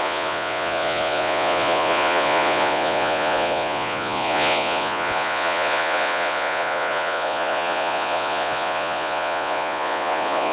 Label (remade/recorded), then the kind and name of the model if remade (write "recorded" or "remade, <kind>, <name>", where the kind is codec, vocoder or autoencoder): remade, vocoder, Vocos